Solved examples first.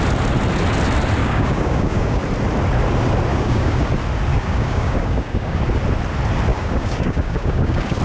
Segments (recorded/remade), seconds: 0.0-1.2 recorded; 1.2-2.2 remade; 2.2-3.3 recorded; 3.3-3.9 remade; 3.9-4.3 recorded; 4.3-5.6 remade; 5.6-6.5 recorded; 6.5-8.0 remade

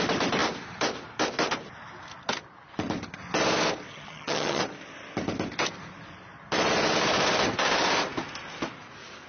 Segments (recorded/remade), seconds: 0.0-3.9 recorded; 3.9-4.6 remade; 4.6-9.3 recorded

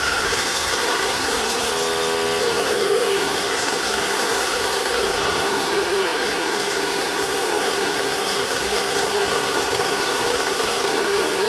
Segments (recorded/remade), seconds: 0.0-1.7 remade; 1.7-2.4 recorded; 2.4-11.5 remade

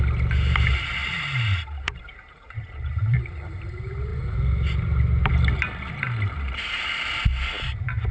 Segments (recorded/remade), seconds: 0.0-1.0 recorded; 1.0-3.6 remade; 3.6-8.1 recorded